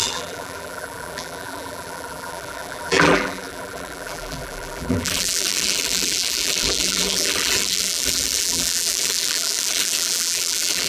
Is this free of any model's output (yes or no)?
no